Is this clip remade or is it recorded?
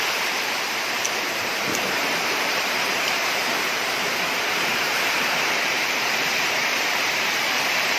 remade